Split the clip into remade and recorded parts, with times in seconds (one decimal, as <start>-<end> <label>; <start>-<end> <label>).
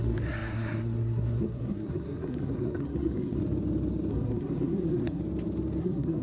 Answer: 0.0-3.4 remade; 3.4-4.1 recorded; 4.1-5.2 remade; 5.2-5.8 recorded; 5.8-6.2 remade